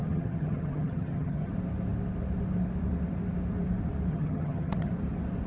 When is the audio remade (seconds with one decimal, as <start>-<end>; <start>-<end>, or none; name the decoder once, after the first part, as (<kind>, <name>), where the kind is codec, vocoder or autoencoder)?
0.0-1.5 (vocoder, HiFi-GAN); 4.1-4.9